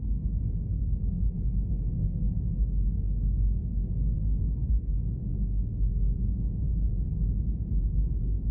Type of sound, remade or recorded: remade